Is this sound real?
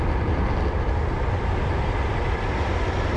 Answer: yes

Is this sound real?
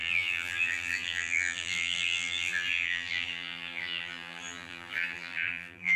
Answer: no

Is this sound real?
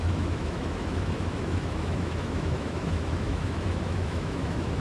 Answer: no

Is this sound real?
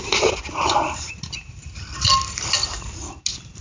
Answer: yes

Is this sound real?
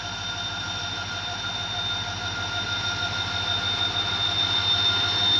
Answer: yes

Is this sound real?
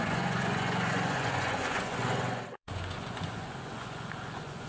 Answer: no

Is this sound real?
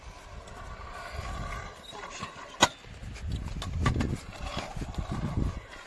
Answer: yes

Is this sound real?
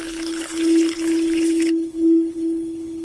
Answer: no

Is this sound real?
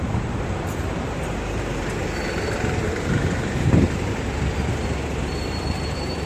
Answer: no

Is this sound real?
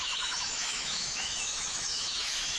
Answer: no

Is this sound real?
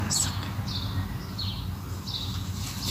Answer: yes